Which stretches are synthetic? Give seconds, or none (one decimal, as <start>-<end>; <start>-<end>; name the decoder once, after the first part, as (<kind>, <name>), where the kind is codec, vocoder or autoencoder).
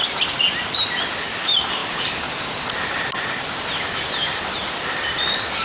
none